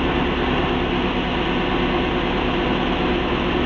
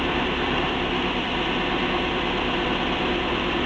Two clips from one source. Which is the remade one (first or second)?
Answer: second